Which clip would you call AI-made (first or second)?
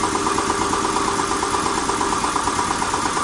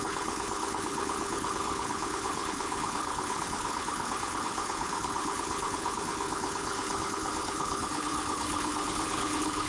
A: second